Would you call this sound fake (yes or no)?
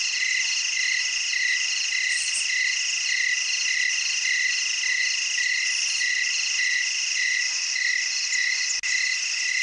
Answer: no